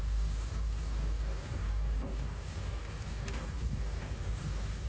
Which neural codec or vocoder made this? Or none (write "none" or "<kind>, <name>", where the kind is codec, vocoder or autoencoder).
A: codec, DAC